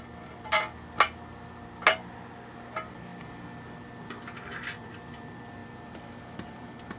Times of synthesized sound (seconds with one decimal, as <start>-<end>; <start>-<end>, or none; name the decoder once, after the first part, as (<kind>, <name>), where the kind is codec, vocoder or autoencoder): none